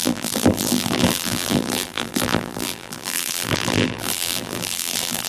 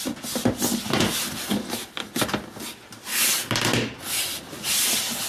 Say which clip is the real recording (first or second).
second